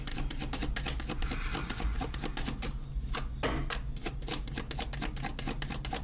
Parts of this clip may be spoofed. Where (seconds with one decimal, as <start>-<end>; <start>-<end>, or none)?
1.6-2.1